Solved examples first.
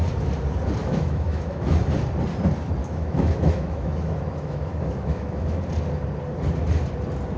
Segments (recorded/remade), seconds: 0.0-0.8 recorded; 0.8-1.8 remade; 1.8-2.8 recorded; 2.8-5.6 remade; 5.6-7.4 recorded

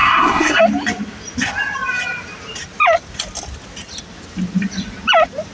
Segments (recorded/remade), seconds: 0.0-0.6 remade; 0.6-5.5 recorded

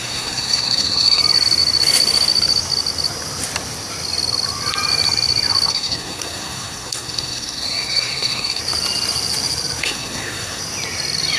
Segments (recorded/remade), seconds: 0.0-1.2 remade; 1.2-5.7 recorded; 5.7-8.6 remade; 8.6-9.8 recorded; 9.8-10.6 remade; 10.6-11.4 recorded

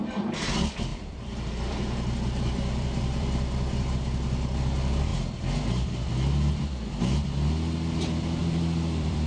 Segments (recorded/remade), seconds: 0.0-0.9 recorded; 0.9-3.9 remade; 3.9-8.4 recorded; 8.4-9.3 remade

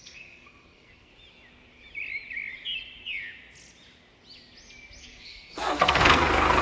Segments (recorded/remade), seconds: 0.0-1.1 remade; 1.1-5.0 recorded; 5.0-6.6 remade